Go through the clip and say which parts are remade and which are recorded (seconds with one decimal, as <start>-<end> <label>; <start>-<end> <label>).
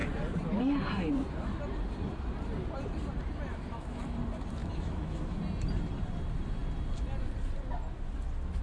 0.0-3.5 recorded; 3.5-4.0 remade; 4.0-4.6 recorded; 4.6-5.4 remade; 5.4-8.6 recorded